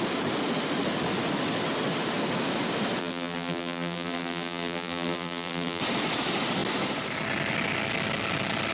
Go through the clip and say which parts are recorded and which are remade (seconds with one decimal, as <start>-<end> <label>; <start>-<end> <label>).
0.0-3.0 recorded; 3.0-5.8 remade; 5.8-8.7 recorded